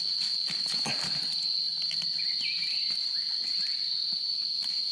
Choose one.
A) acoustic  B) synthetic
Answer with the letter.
A